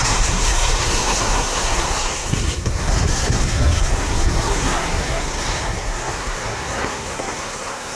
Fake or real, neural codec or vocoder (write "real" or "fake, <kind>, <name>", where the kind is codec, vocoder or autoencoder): fake, codec, SNAC